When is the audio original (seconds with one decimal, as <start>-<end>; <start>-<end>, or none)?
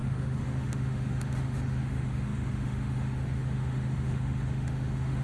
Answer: none